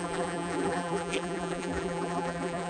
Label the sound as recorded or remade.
remade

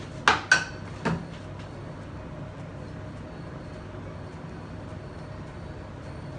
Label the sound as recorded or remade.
recorded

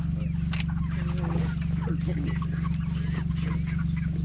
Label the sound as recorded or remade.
recorded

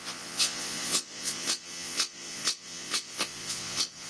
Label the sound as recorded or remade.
remade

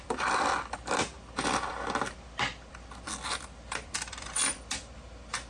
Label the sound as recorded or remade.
remade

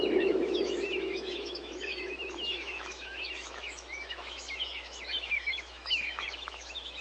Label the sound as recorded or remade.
remade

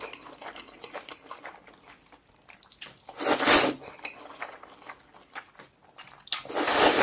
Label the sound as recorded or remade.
recorded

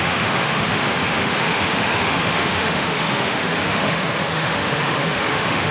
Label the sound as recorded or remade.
remade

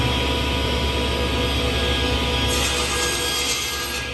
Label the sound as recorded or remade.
recorded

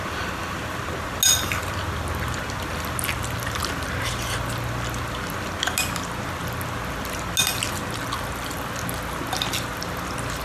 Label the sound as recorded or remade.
recorded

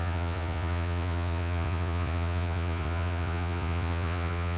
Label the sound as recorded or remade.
remade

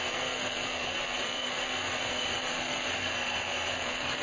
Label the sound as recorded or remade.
remade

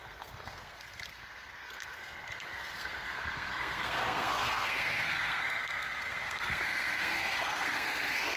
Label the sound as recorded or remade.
remade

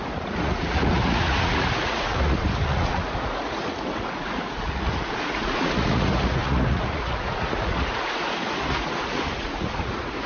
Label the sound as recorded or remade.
remade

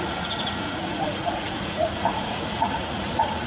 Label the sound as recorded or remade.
remade